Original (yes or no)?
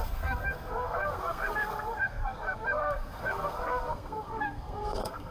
no